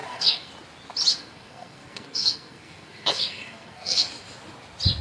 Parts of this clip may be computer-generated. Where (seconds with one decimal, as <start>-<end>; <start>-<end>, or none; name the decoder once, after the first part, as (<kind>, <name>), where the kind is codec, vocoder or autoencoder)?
0.0-0.5 (codec, SNAC); 1.1-4.1

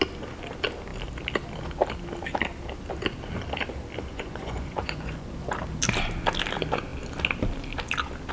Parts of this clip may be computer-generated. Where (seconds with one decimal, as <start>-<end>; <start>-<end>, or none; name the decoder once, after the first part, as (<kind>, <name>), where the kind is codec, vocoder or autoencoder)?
4.1-5.5 (vocoder, Vocos)

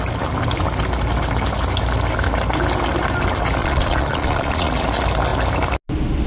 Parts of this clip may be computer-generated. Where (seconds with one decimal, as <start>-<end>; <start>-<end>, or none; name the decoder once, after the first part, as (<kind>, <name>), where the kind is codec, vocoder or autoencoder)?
3.6-4.7 (vocoder, Vocos)

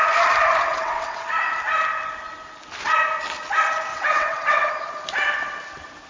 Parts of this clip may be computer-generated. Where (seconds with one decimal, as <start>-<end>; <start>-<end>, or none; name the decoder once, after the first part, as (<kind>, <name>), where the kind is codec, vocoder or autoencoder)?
0.7-1.3 (vocoder, WaveNeXt); 3.9-4.7

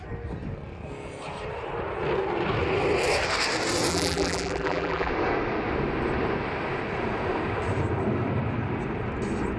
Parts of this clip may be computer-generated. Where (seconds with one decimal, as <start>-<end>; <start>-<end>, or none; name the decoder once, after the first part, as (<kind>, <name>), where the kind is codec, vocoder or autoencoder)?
3.9-5.1 (vocoder, BigVGAN v2)

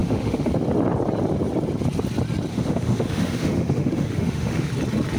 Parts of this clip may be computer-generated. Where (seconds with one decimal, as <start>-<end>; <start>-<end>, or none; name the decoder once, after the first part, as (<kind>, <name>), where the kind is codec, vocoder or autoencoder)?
0.0-0.5 (autoencoder, DAC-VAE); 2.5-4.7

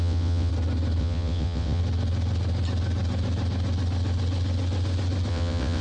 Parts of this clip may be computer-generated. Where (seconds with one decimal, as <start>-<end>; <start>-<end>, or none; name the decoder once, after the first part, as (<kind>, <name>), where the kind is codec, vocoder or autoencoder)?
0.0-0.5 (vocoder, WaveNeXt); 1.0-1.8; 5.3-5.8

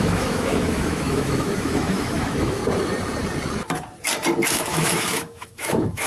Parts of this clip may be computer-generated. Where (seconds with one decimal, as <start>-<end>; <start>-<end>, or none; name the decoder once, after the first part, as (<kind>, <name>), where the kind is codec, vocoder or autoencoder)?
0.0-2.6 (autoencoder, DAC-VAE); 4.5-6.1